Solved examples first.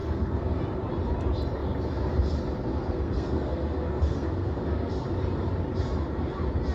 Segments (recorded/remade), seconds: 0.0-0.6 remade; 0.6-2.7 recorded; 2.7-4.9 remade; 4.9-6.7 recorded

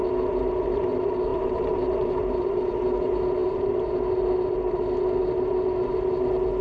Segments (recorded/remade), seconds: 0.0-1.3 recorded; 1.3-2.7 remade; 2.7-3.4 recorded; 3.4-3.9 remade; 3.9-6.6 recorded

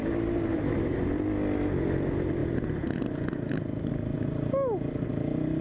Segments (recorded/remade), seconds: 0.0-1.1 remade; 1.1-5.6 recorded

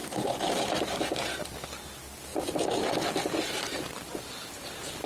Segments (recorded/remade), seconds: 0.0-1.9 remade; 1.9-2.3 recorded; 2.3-4.2 remade; 4.2-5.1 recorded

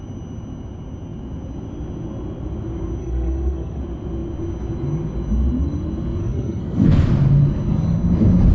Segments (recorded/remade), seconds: 0.0-3.0 recorded; 3.0-3.8 remade; 3.8-6.2 recorded; 6.2-7.0 remade; 7.0-8.5 recorded